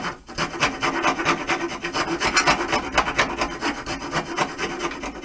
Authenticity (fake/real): real